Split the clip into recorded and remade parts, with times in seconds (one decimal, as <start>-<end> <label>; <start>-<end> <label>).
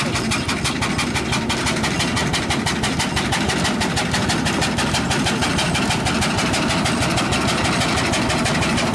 0.0-8.9 recorded